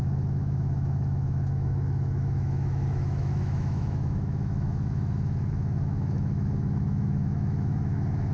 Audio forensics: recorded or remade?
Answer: remade